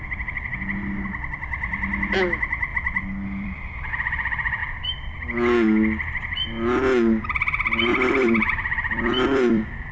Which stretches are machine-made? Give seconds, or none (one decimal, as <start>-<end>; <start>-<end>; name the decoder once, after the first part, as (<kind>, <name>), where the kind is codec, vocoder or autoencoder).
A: 2.7-3.9 (vocoder, BigVGAN v2); 4.6-5.1; 7.9-9.9